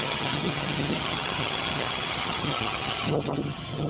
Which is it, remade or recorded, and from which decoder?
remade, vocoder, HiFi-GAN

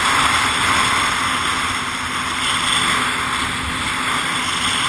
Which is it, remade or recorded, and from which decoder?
recorded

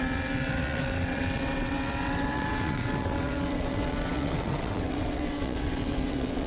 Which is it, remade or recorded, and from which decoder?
remade, vocoder, WaveNeXt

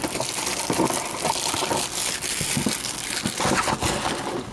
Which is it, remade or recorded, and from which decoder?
recorded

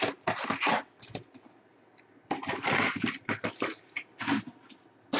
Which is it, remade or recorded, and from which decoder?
recorded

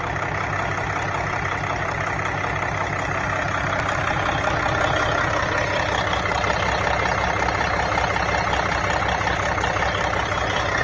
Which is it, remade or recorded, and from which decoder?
recorded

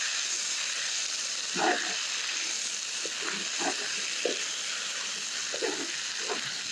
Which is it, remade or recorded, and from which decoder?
recorded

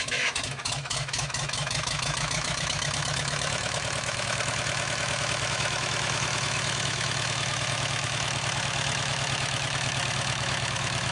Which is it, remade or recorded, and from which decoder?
remade, autoencoder, DAC-VAE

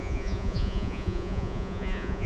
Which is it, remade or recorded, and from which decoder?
remade, vocoder, Vocos